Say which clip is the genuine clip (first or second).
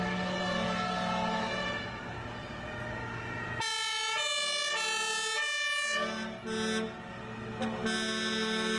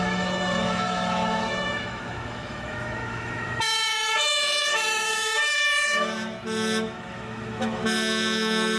first